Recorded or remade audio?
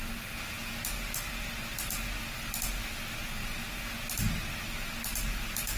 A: recorded